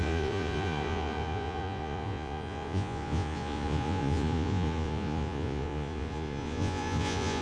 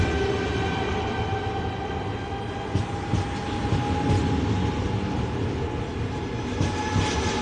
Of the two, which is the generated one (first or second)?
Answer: first